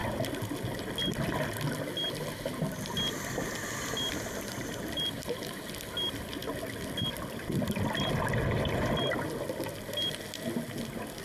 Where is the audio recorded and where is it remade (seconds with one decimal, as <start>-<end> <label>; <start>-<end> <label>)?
0.0-11.2 recorded